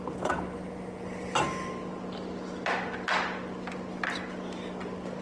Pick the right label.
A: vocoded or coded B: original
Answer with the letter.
B